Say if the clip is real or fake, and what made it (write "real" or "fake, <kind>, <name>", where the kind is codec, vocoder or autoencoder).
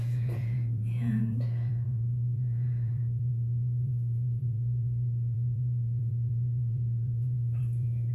fake, vocoder, Vocos